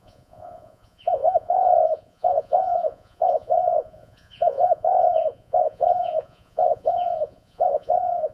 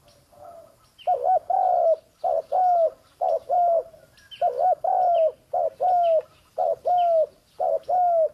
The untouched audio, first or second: second